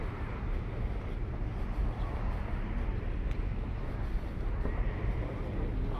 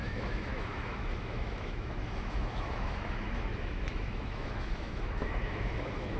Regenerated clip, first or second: second